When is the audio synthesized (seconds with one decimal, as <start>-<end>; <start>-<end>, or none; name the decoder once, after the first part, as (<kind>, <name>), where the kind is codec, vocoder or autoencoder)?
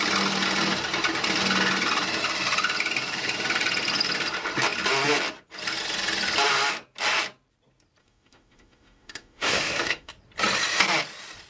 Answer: 8.0-10.1 (autoencoder, DAC-VAE)